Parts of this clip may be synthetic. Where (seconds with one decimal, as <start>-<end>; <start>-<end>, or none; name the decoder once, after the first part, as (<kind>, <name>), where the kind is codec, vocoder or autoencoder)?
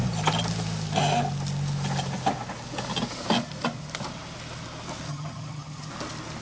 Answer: 5.1-5.9 (vocoder, HiFi-GAN)